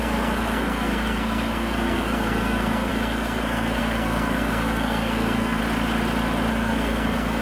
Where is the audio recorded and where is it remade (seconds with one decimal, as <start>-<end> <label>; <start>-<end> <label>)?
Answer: 0.0-5.6 remade; 5.6-6.5 recorded; 6.5-7.4 remade

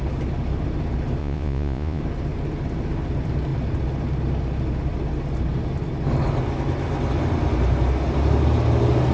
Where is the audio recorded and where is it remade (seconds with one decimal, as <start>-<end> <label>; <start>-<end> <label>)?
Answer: 0.0-1.2 recorded; 1.2-2.0 remade; 2.0-9.1 recorded